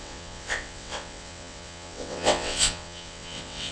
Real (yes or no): no